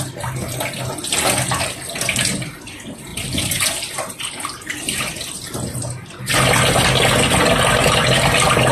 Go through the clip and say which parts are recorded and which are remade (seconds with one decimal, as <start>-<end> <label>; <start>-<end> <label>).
0.0-3.1 recorded; 3.1-4.3 remade; 4.3-8.7 recorded